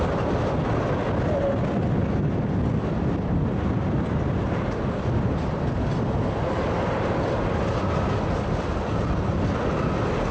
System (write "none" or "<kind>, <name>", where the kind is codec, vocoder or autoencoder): none